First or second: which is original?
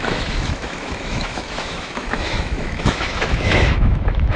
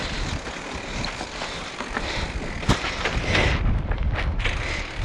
second